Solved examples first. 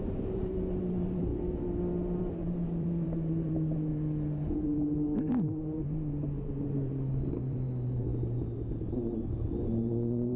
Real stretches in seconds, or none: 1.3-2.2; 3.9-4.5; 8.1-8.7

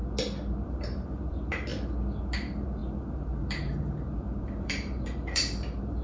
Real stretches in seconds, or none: 0.0-0.7; 1.7-2.2